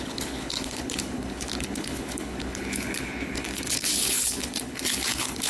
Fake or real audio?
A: fake